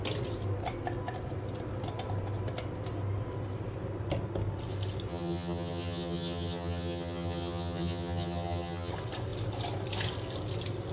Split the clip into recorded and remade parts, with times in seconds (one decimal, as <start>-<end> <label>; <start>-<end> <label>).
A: 0.0-5.1 recorded; 5.1-8.9 remade; 8.9-10.9 recorded

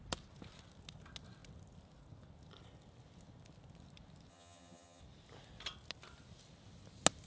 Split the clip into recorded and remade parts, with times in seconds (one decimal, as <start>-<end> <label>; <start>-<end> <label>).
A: 0.0-4.3 recorded; 4.3-5.0 remade; 5.0-7.3 recorded

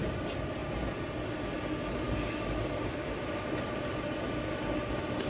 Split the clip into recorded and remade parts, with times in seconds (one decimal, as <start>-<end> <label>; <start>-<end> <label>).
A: 0.0-5.3 recorded

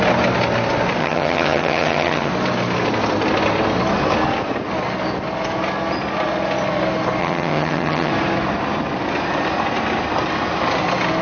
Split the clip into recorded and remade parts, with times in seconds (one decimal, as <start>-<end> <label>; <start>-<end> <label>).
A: 0.0-1.0 recorded; 1.0-2.3 remade; 2.3-7.2 recorded; 7.2-8.1 remade; 8.1-11.2 recorded

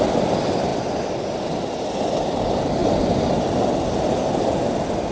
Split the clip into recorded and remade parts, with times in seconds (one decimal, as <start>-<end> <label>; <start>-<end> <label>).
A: 0.0-5.1 recorded

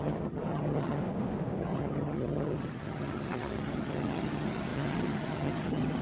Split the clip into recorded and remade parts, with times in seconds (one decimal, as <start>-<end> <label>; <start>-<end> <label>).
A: 0.0-1.0 remade; 1.0-1.6 recorded; 1.6-6.0 remade